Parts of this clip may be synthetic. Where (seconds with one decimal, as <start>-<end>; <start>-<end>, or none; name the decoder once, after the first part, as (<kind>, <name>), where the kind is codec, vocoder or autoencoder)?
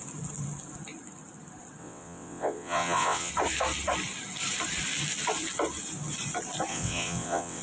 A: 1.8-3.3 (vocoder, WaveNeXt); 6.7-7.6